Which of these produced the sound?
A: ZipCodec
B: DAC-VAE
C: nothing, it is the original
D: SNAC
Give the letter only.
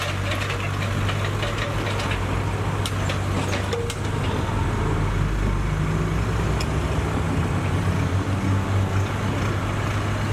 C